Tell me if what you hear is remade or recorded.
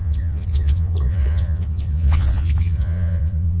remade